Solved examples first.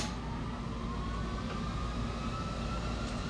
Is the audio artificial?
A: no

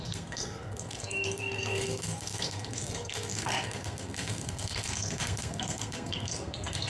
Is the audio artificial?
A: yes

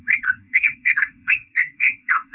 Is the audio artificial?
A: yes